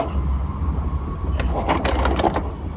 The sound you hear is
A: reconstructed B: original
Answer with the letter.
B